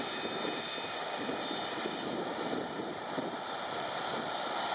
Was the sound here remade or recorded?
remade